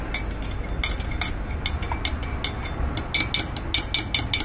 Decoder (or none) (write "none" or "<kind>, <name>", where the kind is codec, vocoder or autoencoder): none